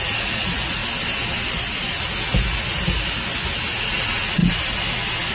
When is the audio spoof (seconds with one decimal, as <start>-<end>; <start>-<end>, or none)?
0.0-0.8; 3.8-4.4